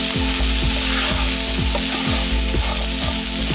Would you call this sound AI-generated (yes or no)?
no